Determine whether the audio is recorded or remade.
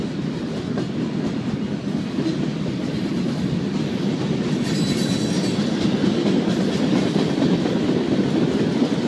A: recorded